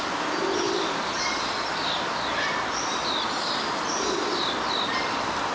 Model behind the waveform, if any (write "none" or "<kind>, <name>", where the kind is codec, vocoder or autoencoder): none